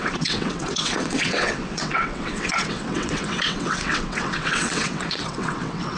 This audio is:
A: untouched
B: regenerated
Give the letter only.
B